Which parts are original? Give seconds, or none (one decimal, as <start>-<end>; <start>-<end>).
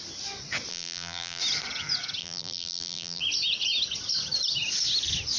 0.0-0.7; 1.4-2.2; 3.2-5.4